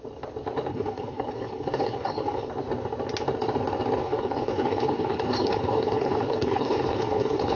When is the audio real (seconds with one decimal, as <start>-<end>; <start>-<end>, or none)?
0.0-0.7; 2.5-4.0